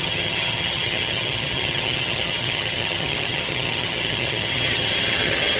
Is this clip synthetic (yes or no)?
yes